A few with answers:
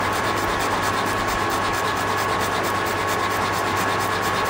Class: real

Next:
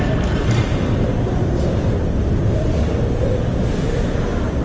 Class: fake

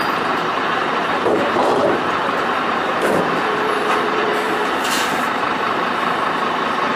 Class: fake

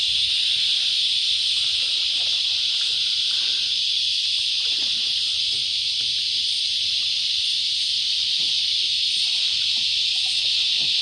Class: fake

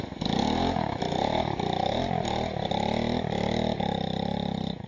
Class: real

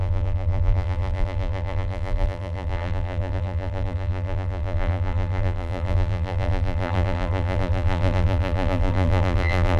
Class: fake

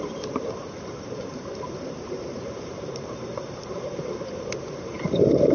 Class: fake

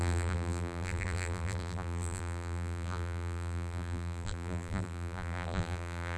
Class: fake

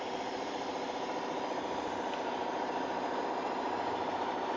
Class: fake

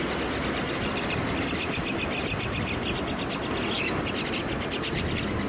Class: real